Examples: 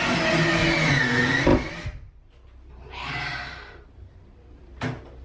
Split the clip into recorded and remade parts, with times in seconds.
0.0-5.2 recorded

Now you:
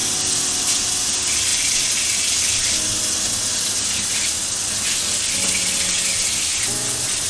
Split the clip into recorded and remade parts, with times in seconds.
0.0-7.3 recorded

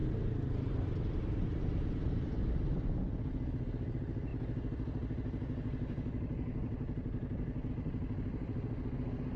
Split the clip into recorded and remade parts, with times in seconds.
0.0-9.4 recorded

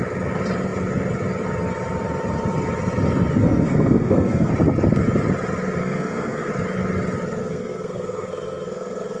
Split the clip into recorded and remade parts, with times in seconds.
0.0-3.4 recorded; 3.4-4.5 remade; 4.5-5.8 recorded; 5.8-6.5 remade; 6.5-7.4 recorded; 7.4-9.2 remade